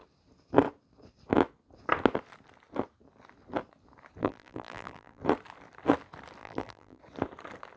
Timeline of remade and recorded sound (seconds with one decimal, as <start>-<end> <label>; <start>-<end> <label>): 0.0-4.2 recorded; 4.2-5.2 remade; 5.2-6.4 recorded; 6.4-7.0 remade; 7.0-7.8 recorded